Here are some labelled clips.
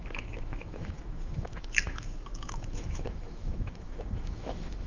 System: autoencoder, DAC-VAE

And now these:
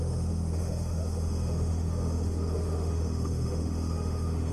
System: autoencoder, DAC-VAE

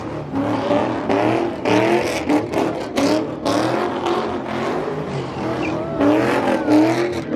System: none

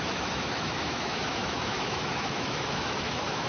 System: autoencoder, DAC-VAE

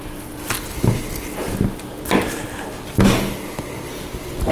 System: none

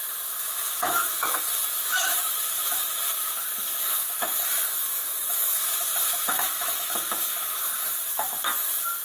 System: autoencoder, DAC-VAE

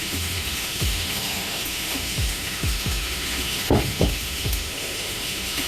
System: autoencoder, DAC-VAE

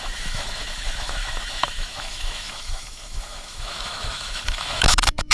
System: autoencoder, DAC-VAE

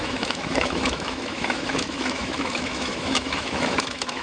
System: autoencoder, DAC-VAE